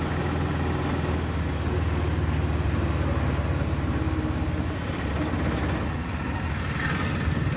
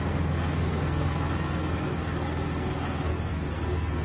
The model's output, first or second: second